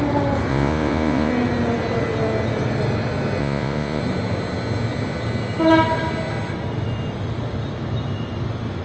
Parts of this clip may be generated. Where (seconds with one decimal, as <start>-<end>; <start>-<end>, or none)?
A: 0.5-1.3; 3.4-4.0